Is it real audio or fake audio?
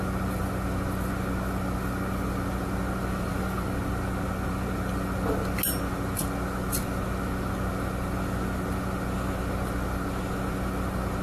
real